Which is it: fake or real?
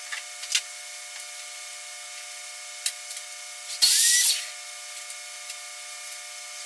real